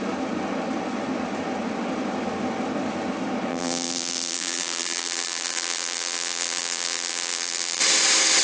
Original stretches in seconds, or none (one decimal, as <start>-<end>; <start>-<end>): 0.0-3.5; 7.8-8.4